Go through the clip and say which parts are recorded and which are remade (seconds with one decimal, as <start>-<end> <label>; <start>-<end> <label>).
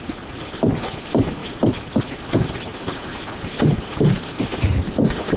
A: 0.0-5.4 recorded